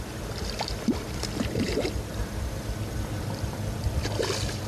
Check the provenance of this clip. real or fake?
fake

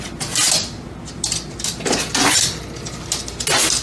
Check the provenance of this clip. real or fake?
real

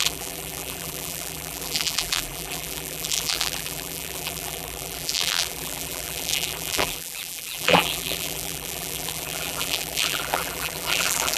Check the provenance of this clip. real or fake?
fake